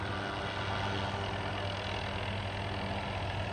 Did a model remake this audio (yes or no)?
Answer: no